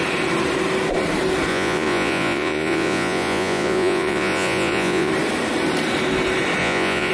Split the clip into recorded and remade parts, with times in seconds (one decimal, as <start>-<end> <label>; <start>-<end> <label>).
0.0-1.5 recorded; 1.5-5.1 remade; 5.1-6.6 recorded; 6.6-7.1 remade